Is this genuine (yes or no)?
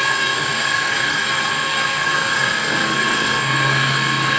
no